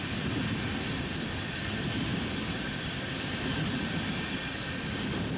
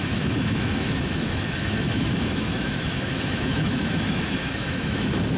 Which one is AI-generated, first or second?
second